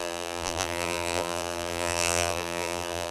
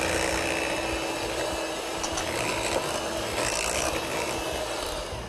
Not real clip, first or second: first